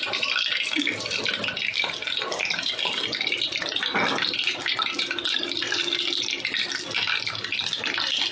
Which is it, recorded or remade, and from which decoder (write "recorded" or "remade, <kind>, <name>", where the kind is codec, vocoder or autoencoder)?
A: recorded